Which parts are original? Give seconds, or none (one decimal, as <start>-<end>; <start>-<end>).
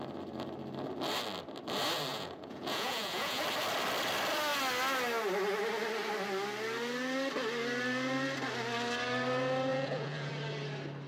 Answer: 0.0-2.1; 3.4-9.7; 10.3-11.1